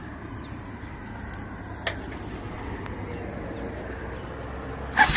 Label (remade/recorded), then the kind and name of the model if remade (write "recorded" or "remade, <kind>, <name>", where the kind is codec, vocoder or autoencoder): recorded